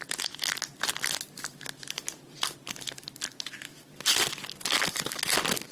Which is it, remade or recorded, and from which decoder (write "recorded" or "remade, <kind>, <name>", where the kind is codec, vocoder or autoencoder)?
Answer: recorded